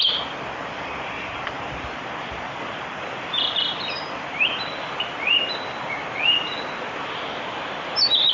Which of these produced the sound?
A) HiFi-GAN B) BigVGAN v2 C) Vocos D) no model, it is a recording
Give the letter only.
D